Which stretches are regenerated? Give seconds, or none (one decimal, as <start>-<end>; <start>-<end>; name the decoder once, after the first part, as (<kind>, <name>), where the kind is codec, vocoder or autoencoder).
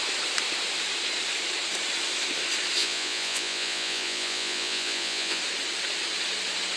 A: 2.8-5.4 (vocoder, Vocos)